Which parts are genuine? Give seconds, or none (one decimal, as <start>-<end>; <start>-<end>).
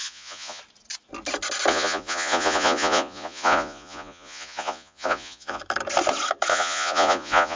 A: 0.6-1.7; 5.6-6.5